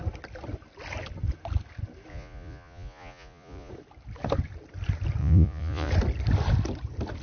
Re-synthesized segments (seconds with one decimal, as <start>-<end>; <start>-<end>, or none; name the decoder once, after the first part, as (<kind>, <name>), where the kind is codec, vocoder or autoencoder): 2.1-3.7 (vocoder, Vocos); 5.2-5.9